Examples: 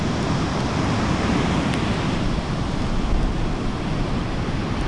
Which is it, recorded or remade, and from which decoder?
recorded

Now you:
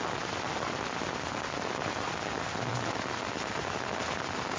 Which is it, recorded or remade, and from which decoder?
recorded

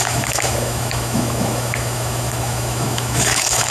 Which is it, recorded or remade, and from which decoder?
remade, autoencoder, DAC-VAE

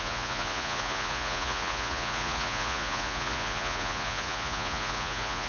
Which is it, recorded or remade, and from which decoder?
remade, vocoder, Vocos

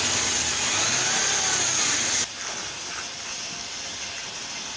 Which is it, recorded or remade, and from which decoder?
recorded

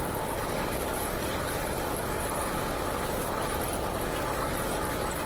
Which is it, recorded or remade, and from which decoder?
recorded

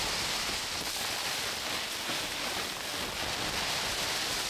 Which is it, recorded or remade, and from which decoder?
recorded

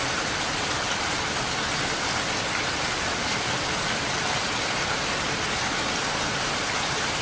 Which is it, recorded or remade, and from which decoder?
recorded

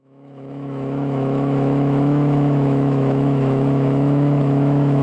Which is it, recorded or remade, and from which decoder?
remade, autoencoder, DAC-VAE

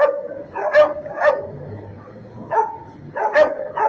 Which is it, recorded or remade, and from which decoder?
remade, codec, DAC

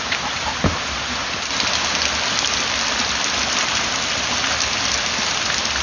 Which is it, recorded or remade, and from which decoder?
recorded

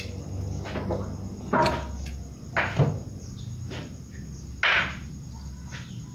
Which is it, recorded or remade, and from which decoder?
recorded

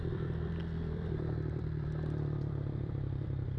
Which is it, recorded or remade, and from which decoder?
remade, vocoder, BigVGAN v2